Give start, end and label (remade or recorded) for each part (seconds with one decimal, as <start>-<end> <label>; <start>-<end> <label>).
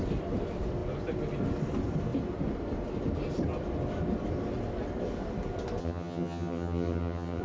0.0-5.8 recorded; 5.8-7.4 remade